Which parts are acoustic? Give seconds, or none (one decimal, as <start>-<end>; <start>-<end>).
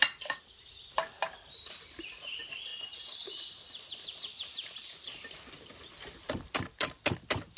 2.7-3.5